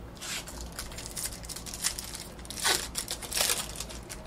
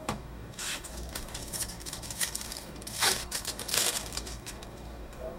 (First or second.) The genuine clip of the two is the first